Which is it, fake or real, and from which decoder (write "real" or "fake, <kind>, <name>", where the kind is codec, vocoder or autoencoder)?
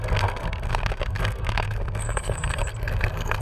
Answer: fake, codec, SNAC